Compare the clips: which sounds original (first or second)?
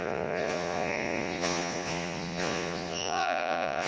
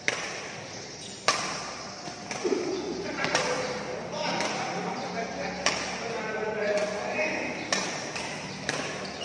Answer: second